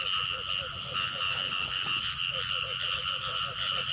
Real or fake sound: real